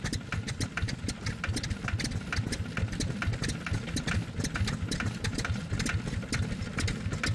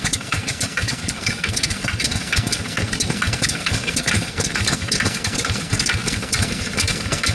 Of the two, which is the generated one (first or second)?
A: second